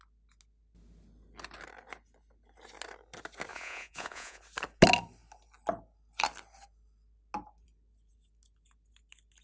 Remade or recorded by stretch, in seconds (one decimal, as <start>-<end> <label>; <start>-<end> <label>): 0.0-3.5 recorded; 3.5-4.4 remade; 4.4-9.4 recorded